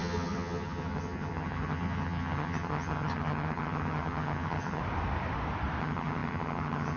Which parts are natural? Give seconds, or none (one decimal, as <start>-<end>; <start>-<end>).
4.8-5.8